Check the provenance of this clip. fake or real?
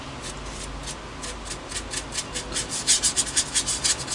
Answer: real